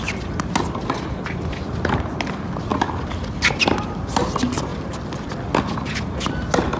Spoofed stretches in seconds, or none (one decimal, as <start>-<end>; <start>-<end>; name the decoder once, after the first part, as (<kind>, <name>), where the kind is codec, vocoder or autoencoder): none